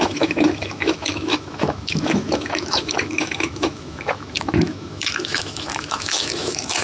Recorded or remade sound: remade